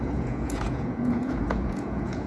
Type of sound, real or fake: fake